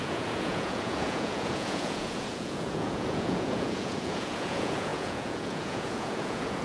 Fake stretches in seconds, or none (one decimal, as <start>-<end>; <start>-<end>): 0.0-6.6